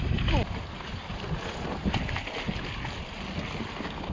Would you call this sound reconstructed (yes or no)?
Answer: no